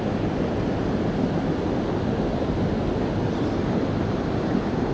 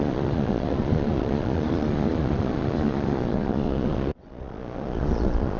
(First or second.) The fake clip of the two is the second